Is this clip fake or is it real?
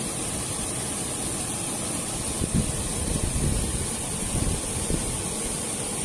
real